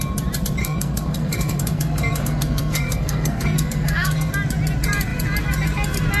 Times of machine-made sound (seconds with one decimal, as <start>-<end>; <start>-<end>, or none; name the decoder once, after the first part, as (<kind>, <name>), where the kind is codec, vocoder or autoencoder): 0.6-4.3 (codec, SNAC)